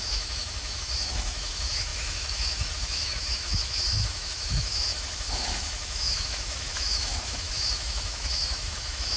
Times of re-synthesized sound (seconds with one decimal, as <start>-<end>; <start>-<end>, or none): 0.0-9.2